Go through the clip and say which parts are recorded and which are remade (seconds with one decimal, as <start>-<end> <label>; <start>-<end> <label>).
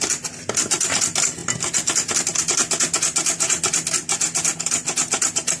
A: 0.0-5.6 recorded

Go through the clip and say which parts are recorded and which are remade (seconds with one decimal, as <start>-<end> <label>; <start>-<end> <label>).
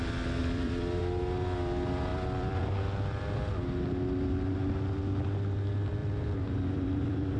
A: 0.0-0.4 recorded; 0.4-1.0 remade; 1.0-2.1 recorded; 2.1-3.5 remade; 3.5-6.0 recorded; 6.0-7.4 remade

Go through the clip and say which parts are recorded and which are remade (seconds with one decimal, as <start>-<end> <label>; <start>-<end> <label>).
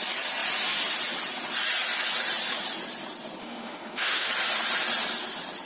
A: 0.0-3.4 recorded; 3.4-4.3 remade; 4.3-5.7 recorded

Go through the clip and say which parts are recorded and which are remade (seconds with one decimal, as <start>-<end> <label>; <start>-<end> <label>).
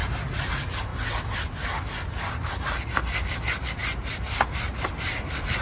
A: 0.0-0.5 recorded; 0.5-0.9 remade; 0.9-1.8 recorded; 1.8-5.6 remade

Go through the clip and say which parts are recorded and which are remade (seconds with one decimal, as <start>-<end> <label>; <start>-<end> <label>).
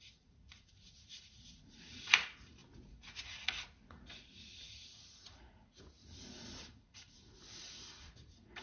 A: 0.0-8.6 remade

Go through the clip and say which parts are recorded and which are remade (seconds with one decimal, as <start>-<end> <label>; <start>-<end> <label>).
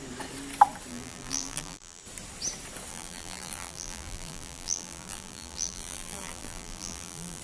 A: 0.0-0.9 recorded; 0.9-2.0 remade; 2.0-2.9 recorded; 2.9-7.4 remade